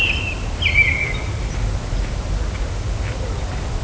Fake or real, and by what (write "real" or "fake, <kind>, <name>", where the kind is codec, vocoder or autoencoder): real